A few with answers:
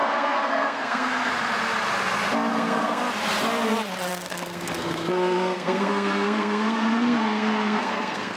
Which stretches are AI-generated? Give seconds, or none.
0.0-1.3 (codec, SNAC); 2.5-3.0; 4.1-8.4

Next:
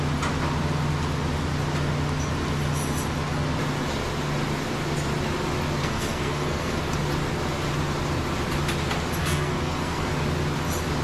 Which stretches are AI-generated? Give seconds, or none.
5.8-6.8 (codec, SNAC); 9.2-10.1

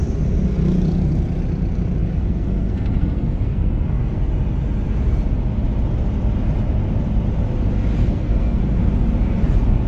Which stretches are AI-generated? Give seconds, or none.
2.0-4.3 (codec, SNAC); 8.0-8.6

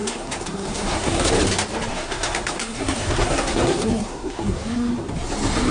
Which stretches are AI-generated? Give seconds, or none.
0.0-1.3 (codec, SNAC); 1.9-4.9

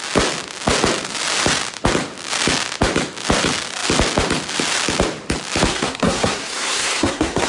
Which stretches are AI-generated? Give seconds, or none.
5.7-7.5 (codec, SNAC)